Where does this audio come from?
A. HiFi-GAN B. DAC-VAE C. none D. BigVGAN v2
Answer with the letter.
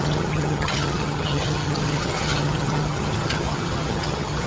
A